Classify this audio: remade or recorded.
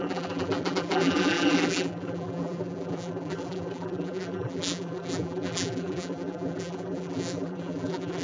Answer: remade